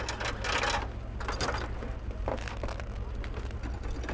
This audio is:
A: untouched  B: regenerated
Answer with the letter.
A